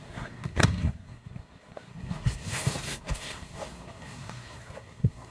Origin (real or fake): fake